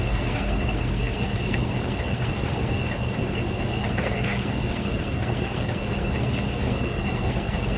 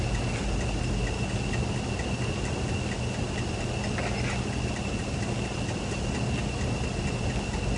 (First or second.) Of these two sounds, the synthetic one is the first